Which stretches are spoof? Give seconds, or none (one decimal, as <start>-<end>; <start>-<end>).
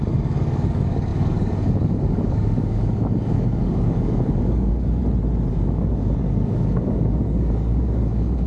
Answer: 0.0-5.0; 5.5-8.5